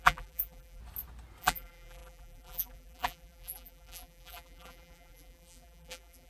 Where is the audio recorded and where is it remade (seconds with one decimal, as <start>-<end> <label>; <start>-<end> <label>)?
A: 0.0-0.8 remade; 0.8-1.4 recorded; 1.4-6.3 remade